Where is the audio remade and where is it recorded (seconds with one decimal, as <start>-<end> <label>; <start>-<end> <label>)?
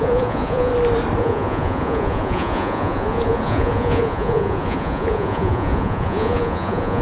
0.0-0.7 remade; 0.7-1.2 recorded; 1.2-7.0 remade